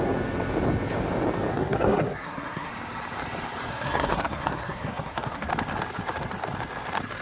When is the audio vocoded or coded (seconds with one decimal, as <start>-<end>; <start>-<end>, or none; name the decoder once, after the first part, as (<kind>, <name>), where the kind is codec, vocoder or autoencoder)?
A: 1.5-2.7 (codec, SNAC); 3.7-5.5